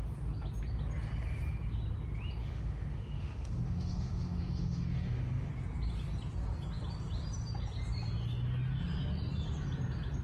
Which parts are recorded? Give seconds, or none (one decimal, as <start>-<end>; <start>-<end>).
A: 0.0-2.4; 5.5-10.2